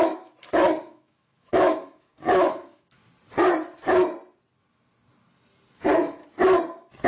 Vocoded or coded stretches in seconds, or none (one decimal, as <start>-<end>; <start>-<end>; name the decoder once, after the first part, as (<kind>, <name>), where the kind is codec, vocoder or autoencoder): 0.0-3.0 (autoencoder, DAC-VAE); 5.7-6.2

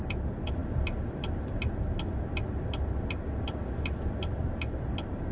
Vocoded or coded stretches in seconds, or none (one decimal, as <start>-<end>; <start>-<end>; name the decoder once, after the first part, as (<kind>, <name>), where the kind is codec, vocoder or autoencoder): none

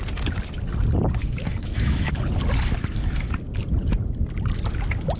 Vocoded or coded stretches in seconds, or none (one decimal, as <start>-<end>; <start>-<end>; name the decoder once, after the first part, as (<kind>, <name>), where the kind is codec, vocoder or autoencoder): 1.2-2.1 (autoencoder, DAC-VAE)